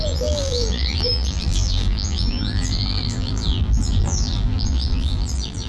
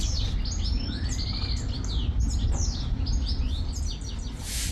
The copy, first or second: first